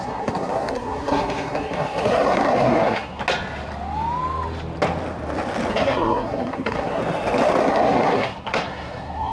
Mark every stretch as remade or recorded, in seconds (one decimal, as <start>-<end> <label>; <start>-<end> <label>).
0.0-3.2 remade; 3.2-5.7 recorded; 5.7-7.0 remade; 7.0-7.6 recorded; 7.6-9.3 remade